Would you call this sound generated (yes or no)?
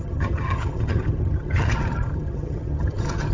yes